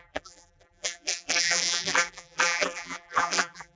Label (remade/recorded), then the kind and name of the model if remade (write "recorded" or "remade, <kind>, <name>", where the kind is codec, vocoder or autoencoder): remade, vocoder, BigVGAN v2